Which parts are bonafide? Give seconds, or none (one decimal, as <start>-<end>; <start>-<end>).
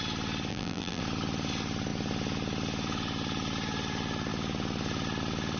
0.0-0.5; 1.0-5.6